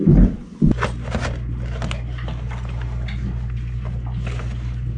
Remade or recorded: recorded